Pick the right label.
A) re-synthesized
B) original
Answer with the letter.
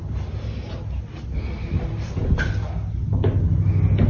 B